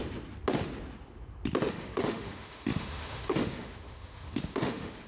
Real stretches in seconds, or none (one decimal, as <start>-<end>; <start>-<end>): 0.0-1.7

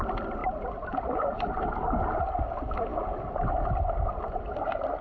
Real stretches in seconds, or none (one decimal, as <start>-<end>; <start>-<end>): 0.0-5.0

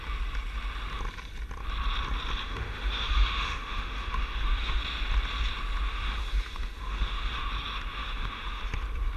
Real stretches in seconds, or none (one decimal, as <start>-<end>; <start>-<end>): 0.0-2.4; 4.8-5.9; 7.5-8.0; 8.6-9.2

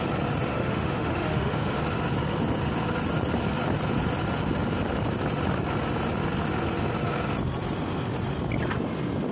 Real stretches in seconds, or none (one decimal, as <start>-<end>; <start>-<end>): 0.0-0.5; 1.8-9.3